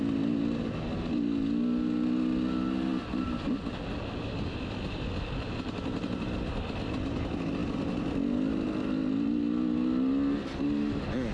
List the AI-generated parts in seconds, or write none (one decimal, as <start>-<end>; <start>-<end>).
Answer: none

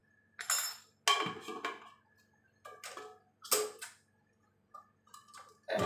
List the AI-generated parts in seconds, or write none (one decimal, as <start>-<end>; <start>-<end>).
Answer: none

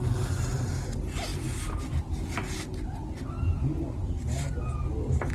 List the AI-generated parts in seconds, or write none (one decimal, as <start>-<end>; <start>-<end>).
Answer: none

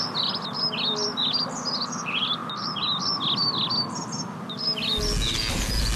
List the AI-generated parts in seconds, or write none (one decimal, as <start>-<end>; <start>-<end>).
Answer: none

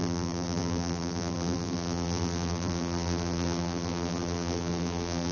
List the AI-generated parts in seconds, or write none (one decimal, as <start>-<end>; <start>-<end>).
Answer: 0.0-5.3

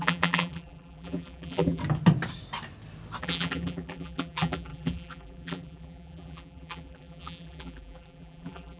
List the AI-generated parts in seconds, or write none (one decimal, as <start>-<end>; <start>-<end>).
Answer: 0.0-1.8; 3.2-8.8

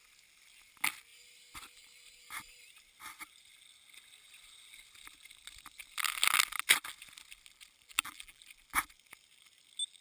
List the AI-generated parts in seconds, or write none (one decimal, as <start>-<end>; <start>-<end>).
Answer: 7.9-8.4